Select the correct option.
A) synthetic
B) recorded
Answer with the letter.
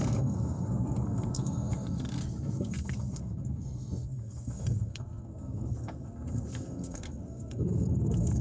A